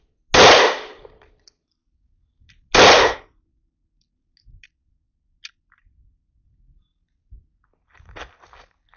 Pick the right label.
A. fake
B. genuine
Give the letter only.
B